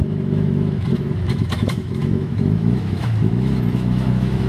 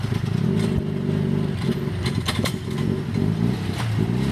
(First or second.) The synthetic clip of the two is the first